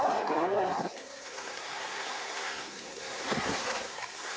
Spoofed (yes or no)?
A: yes